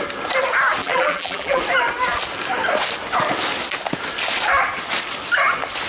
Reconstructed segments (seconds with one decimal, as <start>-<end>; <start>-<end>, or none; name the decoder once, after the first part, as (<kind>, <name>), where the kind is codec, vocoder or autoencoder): 0.8-1.6 (vocoder, BigVGAN v2)